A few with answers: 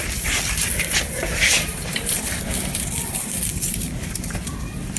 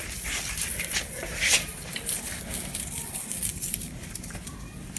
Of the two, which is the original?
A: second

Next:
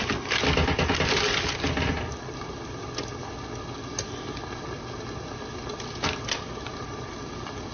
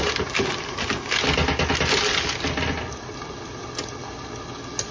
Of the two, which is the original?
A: second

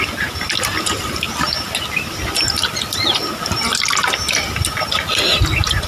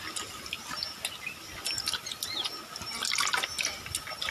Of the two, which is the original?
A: second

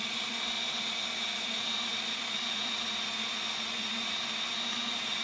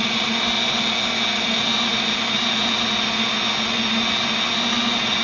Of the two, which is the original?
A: second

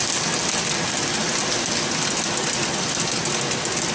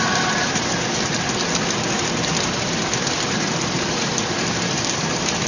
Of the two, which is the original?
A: first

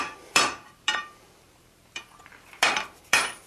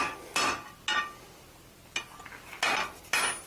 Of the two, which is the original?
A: second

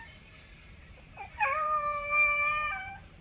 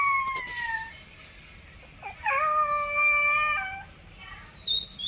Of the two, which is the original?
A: second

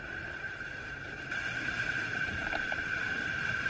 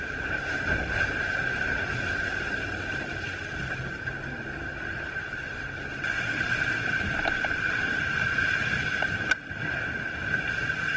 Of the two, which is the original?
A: second